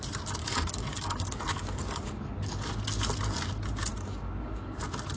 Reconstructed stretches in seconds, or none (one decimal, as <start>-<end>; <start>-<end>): 0.4-2.7; 3.9-4.8